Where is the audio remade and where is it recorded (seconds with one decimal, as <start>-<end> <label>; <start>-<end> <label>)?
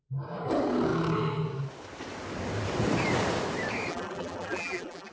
0.0-3.9 recorded; 3.9-5.1 remade